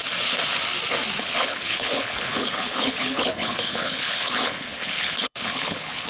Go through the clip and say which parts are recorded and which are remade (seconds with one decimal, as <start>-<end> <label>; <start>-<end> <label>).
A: 0.0-1.2 recorded; 1.2-6.1 remade